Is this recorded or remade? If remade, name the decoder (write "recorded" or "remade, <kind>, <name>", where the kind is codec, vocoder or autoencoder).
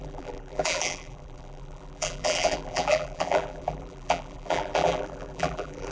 remade, vocoder, BigVGAN v2